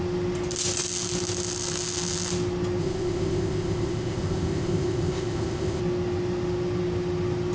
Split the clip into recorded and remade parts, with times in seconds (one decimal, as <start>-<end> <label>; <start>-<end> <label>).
0.0-2.8 recorded; 2.8-5.8 remade; 5.8-7.5 recorded